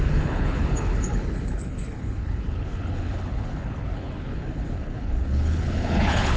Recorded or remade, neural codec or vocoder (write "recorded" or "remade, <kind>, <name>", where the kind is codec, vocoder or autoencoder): remade, codec, HILCodec